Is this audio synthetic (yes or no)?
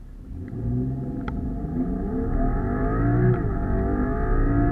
no